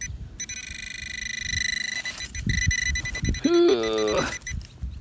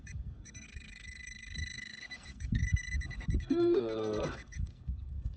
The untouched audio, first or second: first